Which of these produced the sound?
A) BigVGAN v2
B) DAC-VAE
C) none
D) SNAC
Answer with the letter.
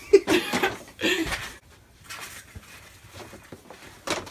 C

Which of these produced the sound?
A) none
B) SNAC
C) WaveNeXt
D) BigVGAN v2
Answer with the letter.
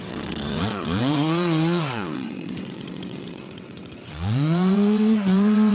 C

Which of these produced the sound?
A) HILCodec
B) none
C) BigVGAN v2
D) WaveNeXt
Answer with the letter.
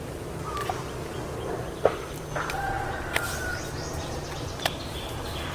C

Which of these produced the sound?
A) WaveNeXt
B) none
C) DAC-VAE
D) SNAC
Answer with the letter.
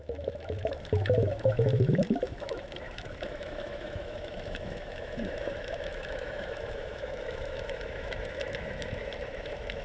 C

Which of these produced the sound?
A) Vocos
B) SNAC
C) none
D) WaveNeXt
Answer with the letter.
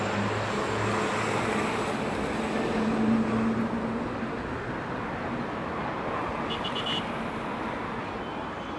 C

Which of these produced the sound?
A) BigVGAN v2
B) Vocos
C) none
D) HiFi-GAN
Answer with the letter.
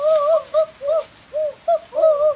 C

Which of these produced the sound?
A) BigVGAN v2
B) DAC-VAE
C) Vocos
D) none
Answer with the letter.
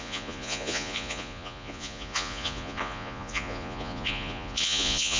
C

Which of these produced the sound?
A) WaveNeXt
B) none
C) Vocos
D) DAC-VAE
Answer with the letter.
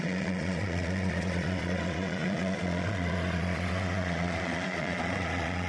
C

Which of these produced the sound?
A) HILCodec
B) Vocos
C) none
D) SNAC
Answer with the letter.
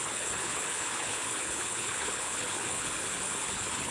A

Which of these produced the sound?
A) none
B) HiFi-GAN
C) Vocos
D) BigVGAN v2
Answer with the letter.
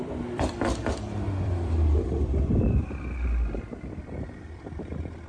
D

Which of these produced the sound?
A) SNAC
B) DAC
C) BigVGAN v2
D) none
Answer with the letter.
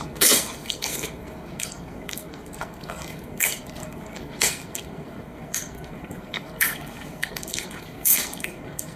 A